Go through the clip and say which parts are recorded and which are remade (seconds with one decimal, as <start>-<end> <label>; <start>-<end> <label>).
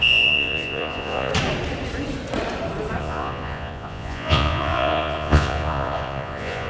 0.0-1.3 remade; 1.3-3.0 recorded; 3.0-6.7 remade